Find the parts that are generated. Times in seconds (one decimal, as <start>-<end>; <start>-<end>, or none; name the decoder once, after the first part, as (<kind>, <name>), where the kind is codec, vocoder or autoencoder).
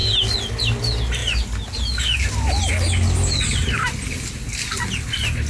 none